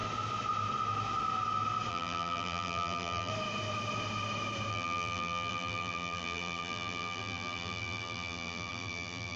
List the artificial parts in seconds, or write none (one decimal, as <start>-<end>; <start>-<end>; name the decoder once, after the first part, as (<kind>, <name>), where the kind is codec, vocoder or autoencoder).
1.9-3.3 (vocoder, BigVGAN v2); 4.7-9.4